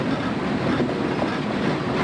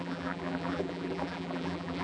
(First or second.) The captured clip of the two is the first